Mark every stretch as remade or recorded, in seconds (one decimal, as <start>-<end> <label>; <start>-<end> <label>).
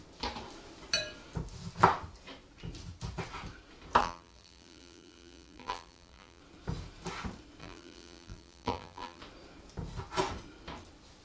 0.0-4.0 recorded; 4.0-6.4 remade; 6.4-7.6 recorded; 7.6-9.2 remade; 9.2-11.2 recorded